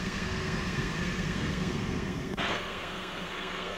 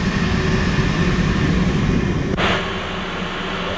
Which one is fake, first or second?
first